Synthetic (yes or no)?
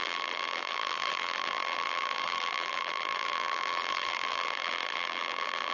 yes